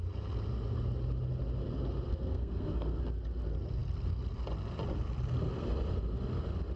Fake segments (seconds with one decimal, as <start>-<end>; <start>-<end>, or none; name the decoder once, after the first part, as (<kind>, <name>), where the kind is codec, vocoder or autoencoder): 2.1-3.0 (codec, SNAC)